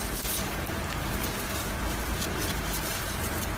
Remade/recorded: recorded